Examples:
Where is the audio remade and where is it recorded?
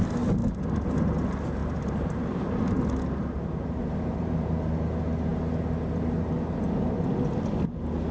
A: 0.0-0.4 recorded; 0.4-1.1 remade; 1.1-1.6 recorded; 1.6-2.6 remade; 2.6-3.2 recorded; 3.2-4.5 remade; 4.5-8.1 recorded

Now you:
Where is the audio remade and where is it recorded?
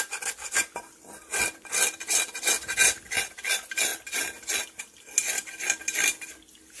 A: 0.0-6.8 recorded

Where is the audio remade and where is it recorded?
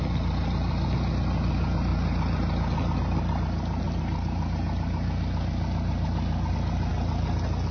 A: 0.0-7.7 recorded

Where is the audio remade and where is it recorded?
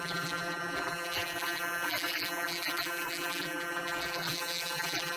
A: 0.0-5.2 remade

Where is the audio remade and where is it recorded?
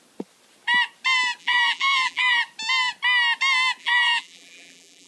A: 0.0-1.4 recorded; 1.4-2.4 remade; 2.4-3.8 recorded; 3.8-5.1 remade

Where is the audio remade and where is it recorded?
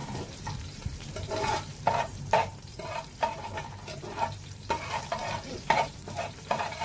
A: 0.0-6.8 remade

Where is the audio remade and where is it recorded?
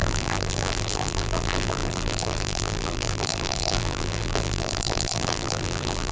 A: 0.0-6.1 remade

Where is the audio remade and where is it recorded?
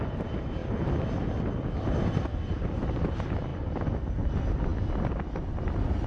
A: 0.0-6.1 recorded